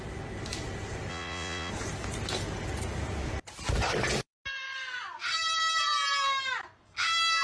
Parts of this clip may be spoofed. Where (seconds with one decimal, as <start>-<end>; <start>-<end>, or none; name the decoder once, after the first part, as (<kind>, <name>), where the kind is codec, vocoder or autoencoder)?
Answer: 1.1-1.7 (vocoder, Vocos)